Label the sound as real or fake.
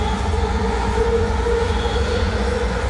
fake